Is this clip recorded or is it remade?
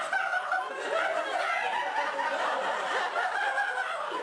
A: recorded